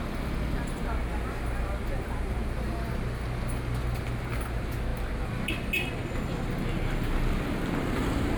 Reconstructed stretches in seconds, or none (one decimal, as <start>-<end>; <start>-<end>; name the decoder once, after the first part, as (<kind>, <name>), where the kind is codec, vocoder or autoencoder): none